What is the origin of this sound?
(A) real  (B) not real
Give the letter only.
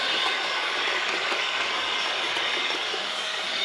B